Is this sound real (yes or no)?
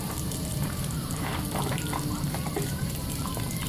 no